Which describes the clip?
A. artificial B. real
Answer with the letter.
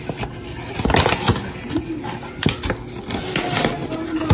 B